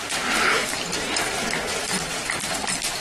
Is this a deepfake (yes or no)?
yes